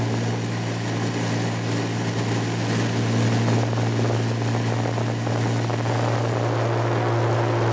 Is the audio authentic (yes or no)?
yes